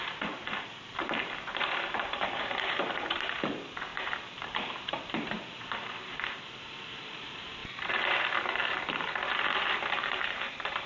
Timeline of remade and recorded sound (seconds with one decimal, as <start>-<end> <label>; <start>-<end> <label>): 0.0-7.6 remade; 7.6-10.0 recorded; 10.0-10.9 remade